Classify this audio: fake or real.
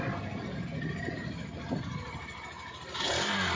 real